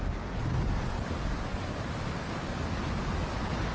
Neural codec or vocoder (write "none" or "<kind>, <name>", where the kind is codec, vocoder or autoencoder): none